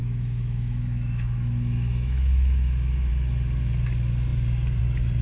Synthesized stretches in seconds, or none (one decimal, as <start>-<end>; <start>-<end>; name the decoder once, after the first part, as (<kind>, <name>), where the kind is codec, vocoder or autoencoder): 0.0-3.1 (autoencoder, DAC-VAE)